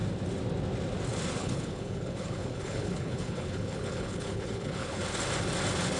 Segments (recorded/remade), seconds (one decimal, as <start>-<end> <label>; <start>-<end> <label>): 0.0-1.4 recorded; 1.4-5.0 remade; 5.0-6.0 recorded